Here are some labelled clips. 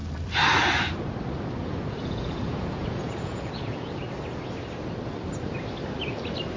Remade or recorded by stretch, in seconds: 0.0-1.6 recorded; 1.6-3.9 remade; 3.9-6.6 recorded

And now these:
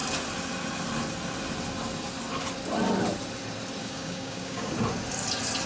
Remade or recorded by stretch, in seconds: 0.0-3.8 recorded; 3.8-4.7 remade; 4.7-5.7 recorded

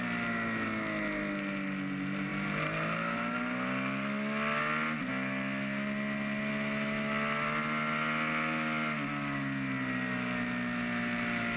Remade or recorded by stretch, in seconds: 0.0-11.6 recorded

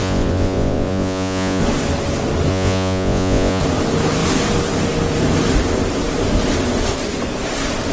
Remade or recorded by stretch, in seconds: 0.0-1.6 remade; 1.6-2.5 recorded; 2.5-3.6 remade; 3.6-7.9 recorded

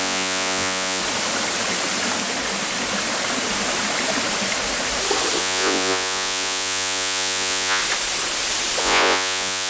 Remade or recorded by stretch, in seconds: 0.0-1.0 remade; 1.0-5.4 recorded; 5.4-7.8 remade; 7.8-8.8 recorded; 8.8-9.7 remade